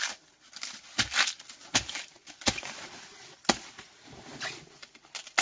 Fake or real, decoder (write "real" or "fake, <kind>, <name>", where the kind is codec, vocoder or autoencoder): real